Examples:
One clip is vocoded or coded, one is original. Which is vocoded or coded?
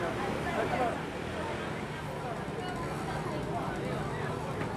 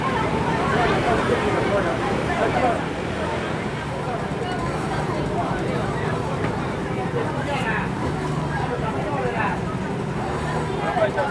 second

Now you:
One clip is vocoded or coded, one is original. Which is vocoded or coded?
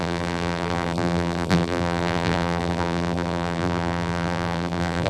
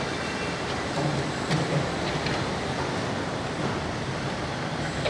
first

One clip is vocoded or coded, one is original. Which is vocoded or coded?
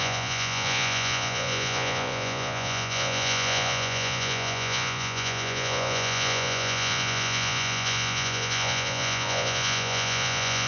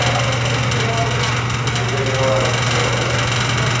first